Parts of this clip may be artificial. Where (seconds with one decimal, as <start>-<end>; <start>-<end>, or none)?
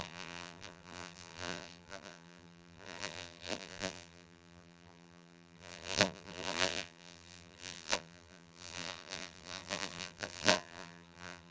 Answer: 0.0-11.5